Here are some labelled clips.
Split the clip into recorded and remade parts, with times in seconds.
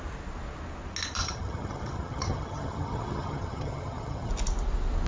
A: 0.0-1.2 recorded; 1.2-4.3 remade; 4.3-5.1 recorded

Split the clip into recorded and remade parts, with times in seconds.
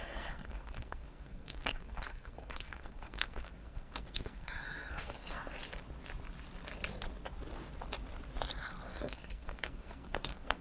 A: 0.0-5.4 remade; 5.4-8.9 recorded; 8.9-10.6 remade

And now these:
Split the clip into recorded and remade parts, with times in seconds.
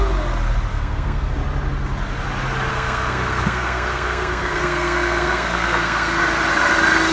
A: 0.0-0.7 recorded; 0.7-1.3 remade; 1.3-2.7 recorded; 2.7-6.2 remade; 6.2-7.1 recorded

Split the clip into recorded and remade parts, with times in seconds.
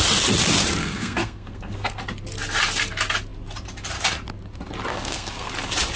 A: 0.0-0.8 recorded; 0.8-2.0 remade; 2.0-4.9 recorded; 4.9-5.5 remade; 5.5-6.0 recorded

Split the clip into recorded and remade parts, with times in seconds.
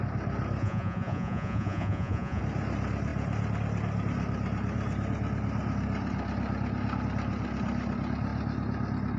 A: 0.0-0.6 recorded; 0.6-2.4 remade; 2.4-9.2 recorded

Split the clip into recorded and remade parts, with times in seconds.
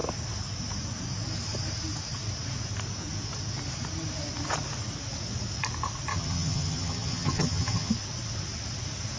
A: 0.0-6.1 recorded; 6.1-7.9 remade; 7.9-9.2 recorded